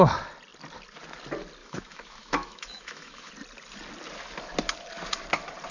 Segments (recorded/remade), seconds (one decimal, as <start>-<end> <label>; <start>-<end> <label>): 0.0-1.6 recorded; 1.6-3.3 remade; 3.3-5.7 recorded